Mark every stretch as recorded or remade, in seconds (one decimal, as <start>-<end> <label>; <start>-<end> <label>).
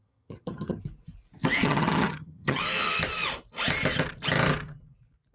0.0-0.8 remade; 0.8-1.6 recorded; 1.6-2.6 remade; 2.6-5.3 recorded